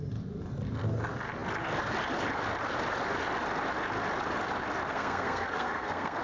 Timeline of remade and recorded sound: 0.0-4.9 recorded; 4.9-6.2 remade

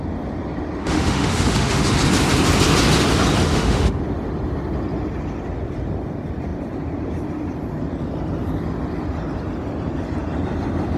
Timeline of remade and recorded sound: 0.0-0.8 recorded; 0.8-1.9 remade; 1.9-3.5 recorded; 3.5-4.0 remade; 4.0-11.0 recorded

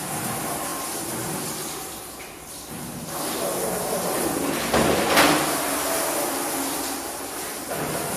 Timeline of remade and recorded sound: 0.0-8.2 recorded

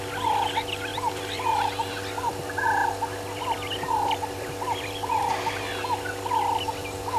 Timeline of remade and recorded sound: 0.0-0.9 recorded; 0.9-2.3 remade; 2.3-2.8 recorded; 2.8-5.6 remade; 5.6-7.2 recorded